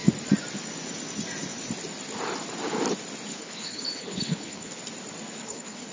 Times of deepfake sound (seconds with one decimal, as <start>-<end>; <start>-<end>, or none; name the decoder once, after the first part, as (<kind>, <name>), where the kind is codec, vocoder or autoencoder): 3.3-4.8 (codec, HILCodec); 5.4-5.9